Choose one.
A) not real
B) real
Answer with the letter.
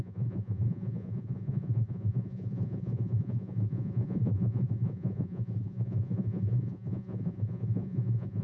A